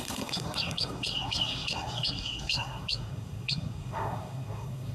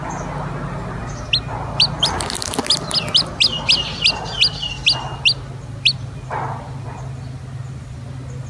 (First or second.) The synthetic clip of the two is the first